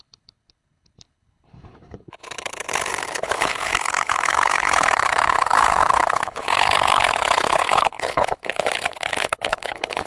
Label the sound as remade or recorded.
remade